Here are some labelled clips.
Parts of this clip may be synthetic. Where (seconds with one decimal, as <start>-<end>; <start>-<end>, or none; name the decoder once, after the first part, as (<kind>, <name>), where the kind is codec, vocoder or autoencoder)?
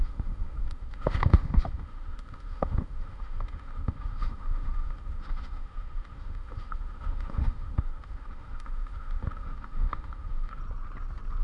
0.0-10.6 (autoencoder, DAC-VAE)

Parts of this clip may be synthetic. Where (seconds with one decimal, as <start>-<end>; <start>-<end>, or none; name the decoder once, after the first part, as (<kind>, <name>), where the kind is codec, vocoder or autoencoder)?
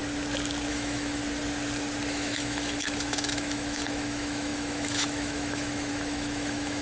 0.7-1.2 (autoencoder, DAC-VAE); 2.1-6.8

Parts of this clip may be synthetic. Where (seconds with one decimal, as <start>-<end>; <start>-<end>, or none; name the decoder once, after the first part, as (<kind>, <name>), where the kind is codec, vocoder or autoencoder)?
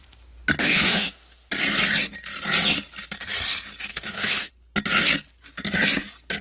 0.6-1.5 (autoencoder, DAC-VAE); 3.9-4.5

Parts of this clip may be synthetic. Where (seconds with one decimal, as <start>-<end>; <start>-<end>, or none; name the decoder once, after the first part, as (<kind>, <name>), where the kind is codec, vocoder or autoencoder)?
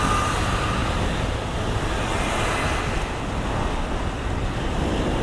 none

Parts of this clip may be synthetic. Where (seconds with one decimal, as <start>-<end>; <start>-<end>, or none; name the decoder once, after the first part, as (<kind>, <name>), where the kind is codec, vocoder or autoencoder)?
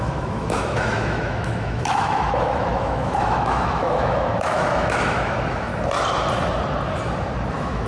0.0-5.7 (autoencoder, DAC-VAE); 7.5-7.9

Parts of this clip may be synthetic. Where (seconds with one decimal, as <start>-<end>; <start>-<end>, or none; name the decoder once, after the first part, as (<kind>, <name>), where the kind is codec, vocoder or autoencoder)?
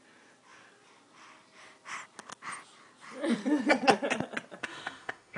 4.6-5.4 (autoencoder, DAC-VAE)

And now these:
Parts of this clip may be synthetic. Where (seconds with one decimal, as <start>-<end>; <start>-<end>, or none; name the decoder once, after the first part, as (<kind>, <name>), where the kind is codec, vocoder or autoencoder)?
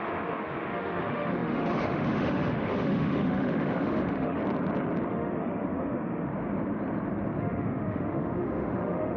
0.0-4.4 (autoencoder, DAC-VAE); 5.1-6.3; 7.4-9.2